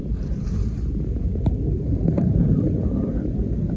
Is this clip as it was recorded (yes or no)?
no